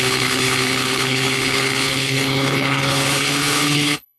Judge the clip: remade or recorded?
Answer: remade